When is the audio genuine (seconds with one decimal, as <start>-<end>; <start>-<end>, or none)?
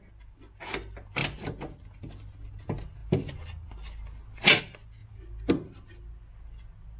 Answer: 0.0-7.0